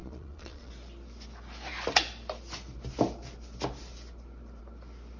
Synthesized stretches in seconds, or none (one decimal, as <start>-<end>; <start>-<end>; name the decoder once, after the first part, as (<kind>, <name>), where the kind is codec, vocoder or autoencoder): 0.0-0.7 (vocoder, Vocos)